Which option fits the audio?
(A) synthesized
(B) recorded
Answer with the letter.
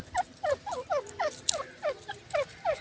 B